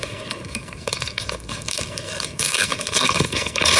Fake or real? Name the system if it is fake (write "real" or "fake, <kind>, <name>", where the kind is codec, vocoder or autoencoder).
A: fake, codec, SNAC